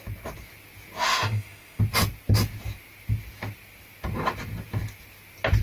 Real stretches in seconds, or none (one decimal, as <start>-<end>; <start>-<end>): 0.0-1.0; 1.8-5.6

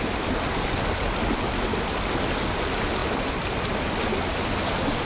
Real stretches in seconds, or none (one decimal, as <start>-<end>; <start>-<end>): 0.0-5.1

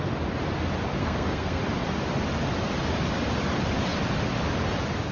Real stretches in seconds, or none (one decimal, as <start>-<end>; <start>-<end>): 0.0-1.0; 1.6-5.1

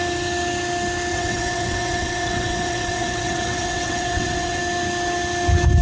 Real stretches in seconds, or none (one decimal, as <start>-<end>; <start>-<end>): 0.0-1.1; 4.6-5.8

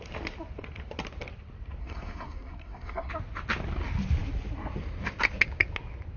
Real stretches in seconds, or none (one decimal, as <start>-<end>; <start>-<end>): 0.0-1.8; 3.1-6.2

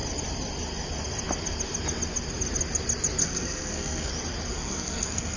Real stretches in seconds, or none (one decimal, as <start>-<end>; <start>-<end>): 0.0-3.2; 4.1-4.5

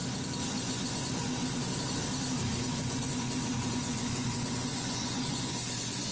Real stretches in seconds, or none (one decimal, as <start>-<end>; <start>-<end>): 0.0-0.5; 1.7-2.6

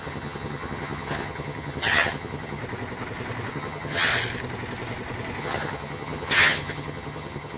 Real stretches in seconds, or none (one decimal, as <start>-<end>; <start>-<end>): 2.6-3.5; 4.1-5.4